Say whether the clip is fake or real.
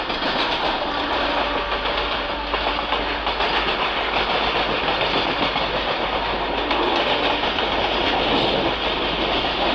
real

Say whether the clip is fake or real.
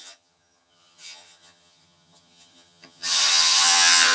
fake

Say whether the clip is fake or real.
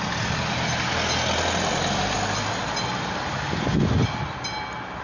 real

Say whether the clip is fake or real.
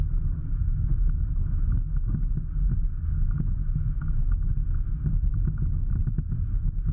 real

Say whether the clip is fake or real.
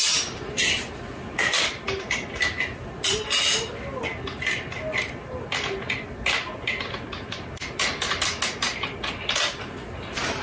real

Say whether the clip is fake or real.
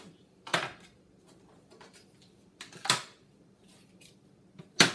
real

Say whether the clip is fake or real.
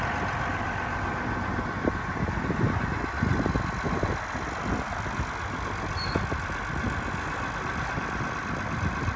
real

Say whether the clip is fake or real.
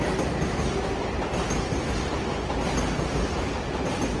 real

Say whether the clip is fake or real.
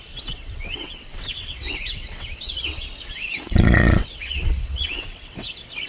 fake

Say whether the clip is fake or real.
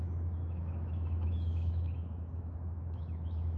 fake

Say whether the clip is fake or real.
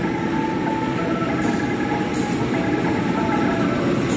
real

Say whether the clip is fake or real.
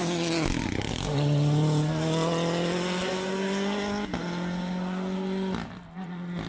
real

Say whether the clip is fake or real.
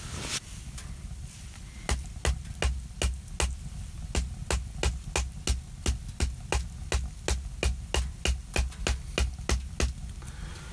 real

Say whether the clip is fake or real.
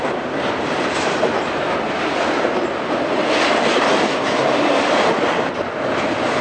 real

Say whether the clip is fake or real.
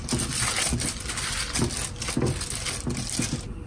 real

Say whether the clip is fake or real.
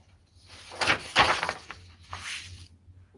real